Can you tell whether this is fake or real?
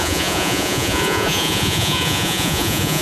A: fake